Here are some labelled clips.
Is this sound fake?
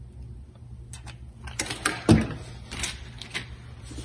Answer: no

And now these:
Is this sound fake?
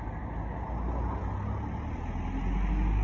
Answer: no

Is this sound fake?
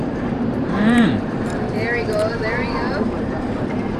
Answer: yes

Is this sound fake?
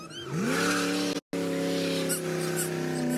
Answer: no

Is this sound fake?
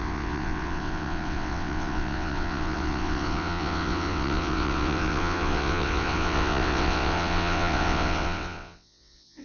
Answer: yes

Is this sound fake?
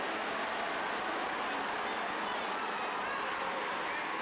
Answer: no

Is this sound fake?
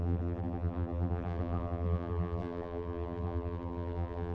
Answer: yes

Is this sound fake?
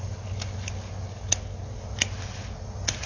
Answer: no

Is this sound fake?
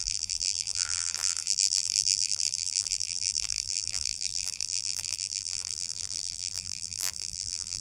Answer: yes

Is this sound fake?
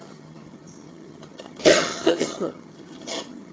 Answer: yes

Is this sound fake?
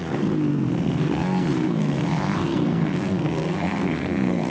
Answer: yes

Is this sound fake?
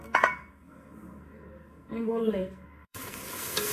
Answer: yes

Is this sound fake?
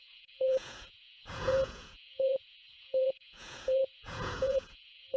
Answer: yes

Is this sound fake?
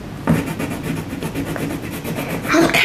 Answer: no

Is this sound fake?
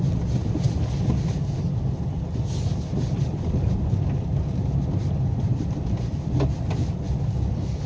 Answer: no